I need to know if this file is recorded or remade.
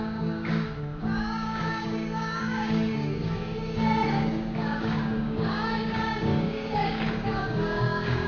remade